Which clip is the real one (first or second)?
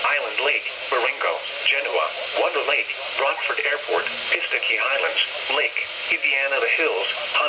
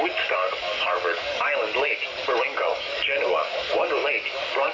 first